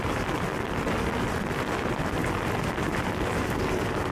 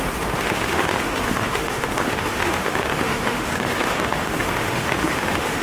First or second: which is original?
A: first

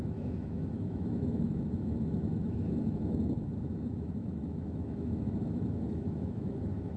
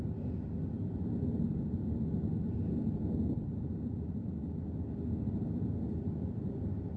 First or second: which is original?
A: second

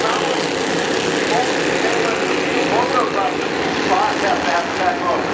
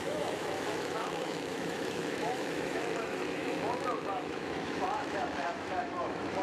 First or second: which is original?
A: first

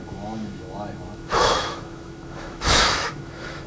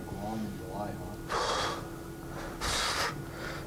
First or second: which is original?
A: second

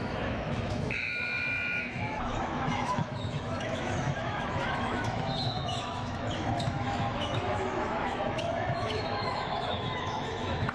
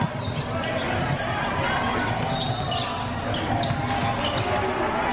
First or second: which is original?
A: second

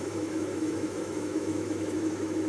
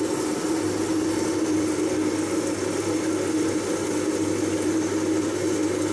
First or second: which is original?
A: second